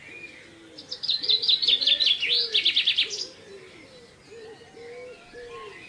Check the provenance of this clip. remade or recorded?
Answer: recorded